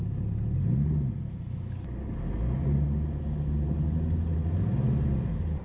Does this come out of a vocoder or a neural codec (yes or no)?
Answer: no